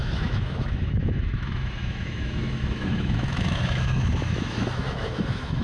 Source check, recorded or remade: remade